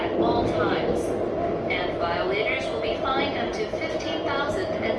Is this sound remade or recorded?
recorded